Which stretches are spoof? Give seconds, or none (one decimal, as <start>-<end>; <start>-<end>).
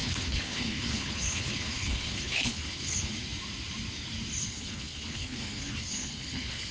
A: 0.0-3.1; 4.4-6.7